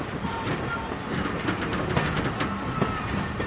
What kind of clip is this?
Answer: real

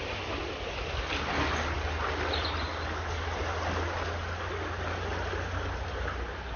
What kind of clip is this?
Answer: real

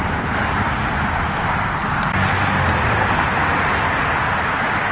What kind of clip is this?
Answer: real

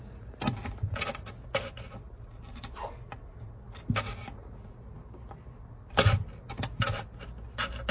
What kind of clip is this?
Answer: real